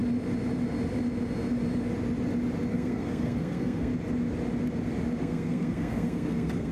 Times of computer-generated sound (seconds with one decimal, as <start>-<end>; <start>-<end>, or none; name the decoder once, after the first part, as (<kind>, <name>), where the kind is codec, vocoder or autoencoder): 2.7-3.9 (codec, SNAC); 5.2-6.7